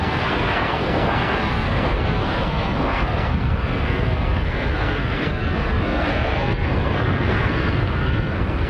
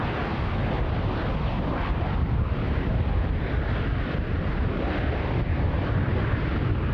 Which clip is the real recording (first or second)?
second